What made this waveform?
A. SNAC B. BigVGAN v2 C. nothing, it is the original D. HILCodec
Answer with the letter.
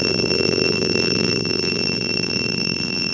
B